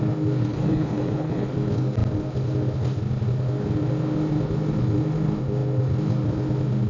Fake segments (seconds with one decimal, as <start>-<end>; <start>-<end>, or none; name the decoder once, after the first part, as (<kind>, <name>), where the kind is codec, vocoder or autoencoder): 0.5-1.5 (codec, HILCodec)